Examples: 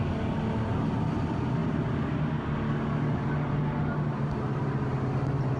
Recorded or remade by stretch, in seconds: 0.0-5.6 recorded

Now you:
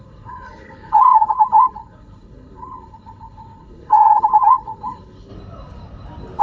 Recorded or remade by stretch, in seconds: 0.0-5.3 remade; 5.3-6.4 recorded

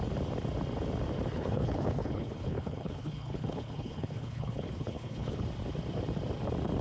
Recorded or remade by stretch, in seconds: 0.0-1.3 recorded; 1.3-5.4 remade; 5.4-6.8 recorded

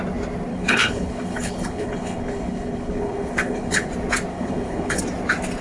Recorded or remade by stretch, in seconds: 0.0-0.5 recorded; 0.5-3.9 remade; 3.9-4.3 recorded; 4.3-5.0 remade; 5.0-5.6 recorded